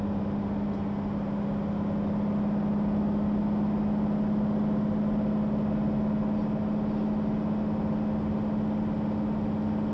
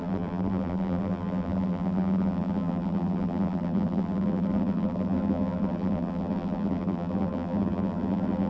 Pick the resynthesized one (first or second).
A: second